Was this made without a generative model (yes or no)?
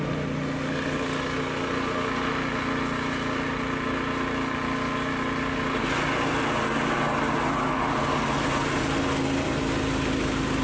yes